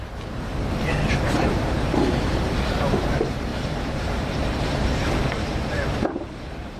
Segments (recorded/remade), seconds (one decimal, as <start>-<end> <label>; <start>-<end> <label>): 0.0-6.8 remade